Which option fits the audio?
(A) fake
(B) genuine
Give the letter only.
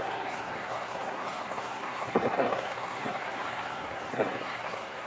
A